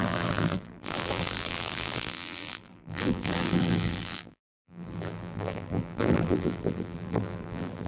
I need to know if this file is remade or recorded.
remade